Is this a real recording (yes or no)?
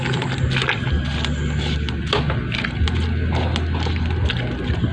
yes